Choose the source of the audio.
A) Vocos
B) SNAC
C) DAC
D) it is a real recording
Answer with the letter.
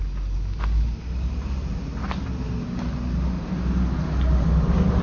D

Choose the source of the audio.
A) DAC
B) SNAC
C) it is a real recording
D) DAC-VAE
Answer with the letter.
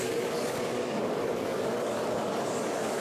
A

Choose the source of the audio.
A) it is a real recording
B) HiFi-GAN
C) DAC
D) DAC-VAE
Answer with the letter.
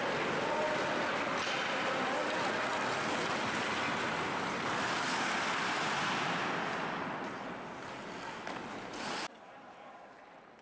A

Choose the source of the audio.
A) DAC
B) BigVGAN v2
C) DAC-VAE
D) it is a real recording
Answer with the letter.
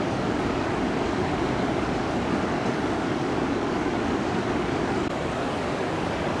A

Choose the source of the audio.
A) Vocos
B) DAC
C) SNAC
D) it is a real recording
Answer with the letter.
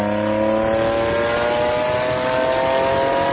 D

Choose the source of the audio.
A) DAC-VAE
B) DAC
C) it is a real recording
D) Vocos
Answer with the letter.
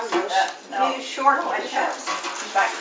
C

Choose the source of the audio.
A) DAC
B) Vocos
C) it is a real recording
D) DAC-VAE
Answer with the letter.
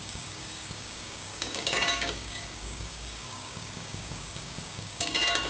A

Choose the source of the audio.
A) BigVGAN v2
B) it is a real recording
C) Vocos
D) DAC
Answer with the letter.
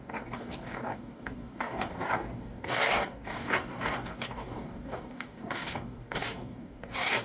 D